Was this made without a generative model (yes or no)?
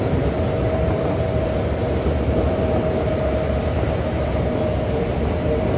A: no